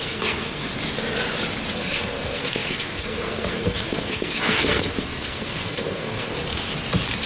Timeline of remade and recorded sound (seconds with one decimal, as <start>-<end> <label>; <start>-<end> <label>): 0.0-0.7 remade; 0.7-1.7 recorded; 1.7-6.3 remade; 6.3-7.3 recorded